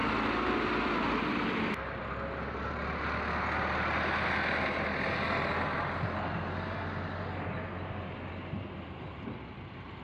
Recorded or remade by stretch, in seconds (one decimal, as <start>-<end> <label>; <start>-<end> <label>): 0.0-10.0 recorded